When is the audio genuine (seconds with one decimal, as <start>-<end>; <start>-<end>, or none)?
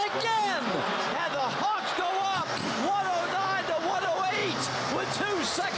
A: 0.0-5.8